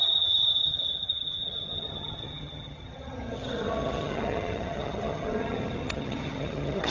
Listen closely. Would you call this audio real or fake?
fake